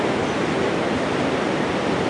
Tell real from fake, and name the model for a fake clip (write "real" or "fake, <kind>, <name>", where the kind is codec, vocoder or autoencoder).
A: real